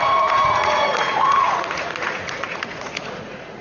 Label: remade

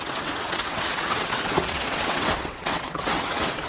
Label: remade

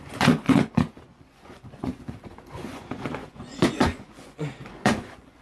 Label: remade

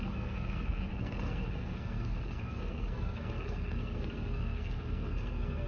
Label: remade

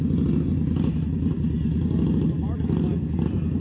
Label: recorded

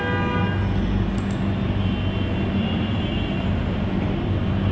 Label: recorded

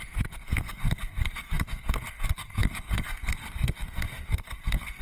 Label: remade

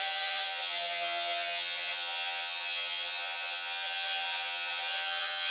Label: remade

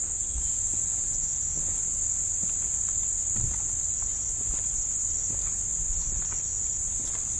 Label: recorded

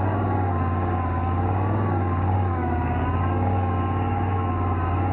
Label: remade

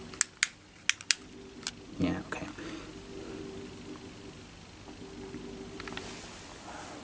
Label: recorded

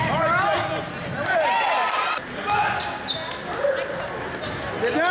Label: recorded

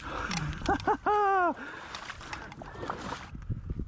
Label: recorded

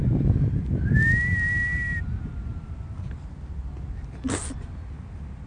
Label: recorded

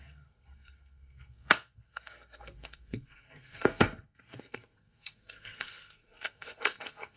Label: remade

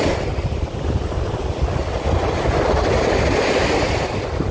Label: recorded